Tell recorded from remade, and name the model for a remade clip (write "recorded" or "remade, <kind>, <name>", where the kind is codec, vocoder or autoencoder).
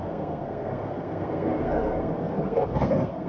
remade, codec, SNAC